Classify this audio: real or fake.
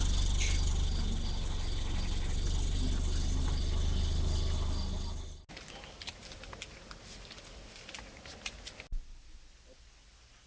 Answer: real